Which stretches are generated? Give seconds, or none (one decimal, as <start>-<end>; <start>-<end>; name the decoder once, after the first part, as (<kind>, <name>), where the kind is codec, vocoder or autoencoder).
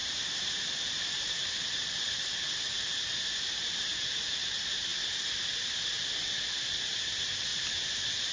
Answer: 0.0-4.5 (vocoder, BigVGAN v2); 7.5-8.3